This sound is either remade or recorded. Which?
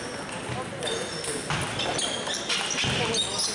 recorded